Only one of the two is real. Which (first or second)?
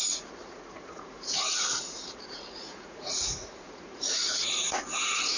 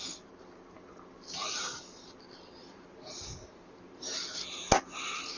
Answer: second